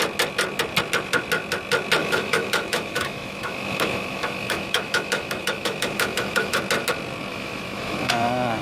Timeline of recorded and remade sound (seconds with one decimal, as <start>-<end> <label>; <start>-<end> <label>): 0.0-2.0 recorded; 2.0-6.6 remade; 6.6-7.3 recorded; 7.3-8.6 remade